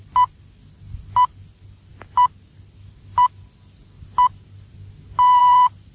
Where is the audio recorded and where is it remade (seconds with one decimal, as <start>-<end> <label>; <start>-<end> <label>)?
0.0-5.9 recorded